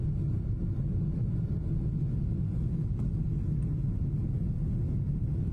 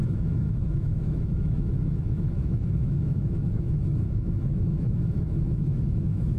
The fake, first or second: second